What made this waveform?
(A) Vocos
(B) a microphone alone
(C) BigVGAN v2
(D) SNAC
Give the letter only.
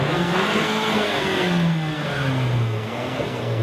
D